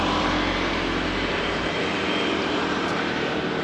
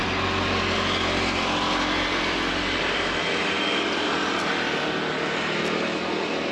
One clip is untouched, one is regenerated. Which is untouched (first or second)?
second